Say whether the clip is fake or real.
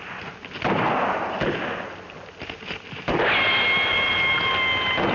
real